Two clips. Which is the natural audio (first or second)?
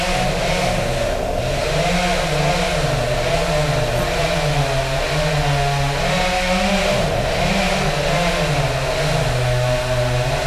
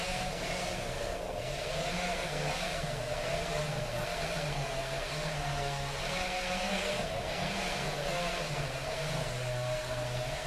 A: first